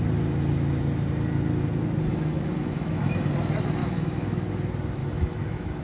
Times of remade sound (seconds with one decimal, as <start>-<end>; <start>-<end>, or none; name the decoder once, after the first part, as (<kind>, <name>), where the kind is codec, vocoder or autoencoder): 2.1-3.3 (autoencoder, DAC-VAE); 3.8-4.5; 5.0-5.8

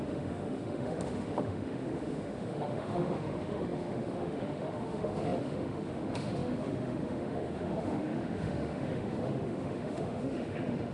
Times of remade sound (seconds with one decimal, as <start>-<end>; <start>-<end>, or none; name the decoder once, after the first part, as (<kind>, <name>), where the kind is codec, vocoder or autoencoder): 0.0-10.9 (autoencoder, DAC-VAE)